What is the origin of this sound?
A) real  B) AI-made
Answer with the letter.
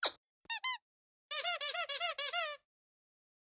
A